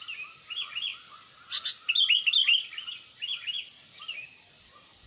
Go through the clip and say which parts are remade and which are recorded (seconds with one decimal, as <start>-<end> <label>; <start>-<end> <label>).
0.0-5.1 recorded